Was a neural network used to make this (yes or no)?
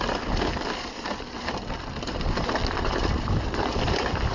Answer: no